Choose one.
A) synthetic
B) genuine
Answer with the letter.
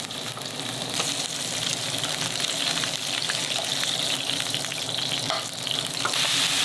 B